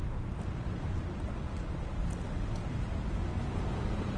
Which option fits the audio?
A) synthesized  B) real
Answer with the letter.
B